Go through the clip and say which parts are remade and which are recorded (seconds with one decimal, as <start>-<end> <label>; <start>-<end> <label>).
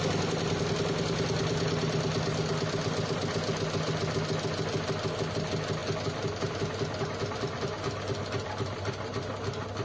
0.0-9.8 recorded